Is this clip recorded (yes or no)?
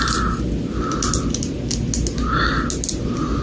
yes